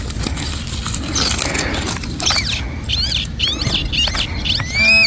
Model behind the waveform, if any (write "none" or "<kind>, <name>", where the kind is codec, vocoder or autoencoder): none